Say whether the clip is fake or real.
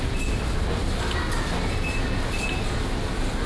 real